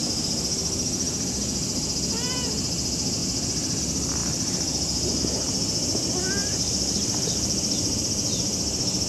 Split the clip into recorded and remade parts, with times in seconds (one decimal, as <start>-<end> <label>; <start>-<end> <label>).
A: 0.0-6.4 recorded; 6.4-8.0 remade; 8.0-9.1 recorded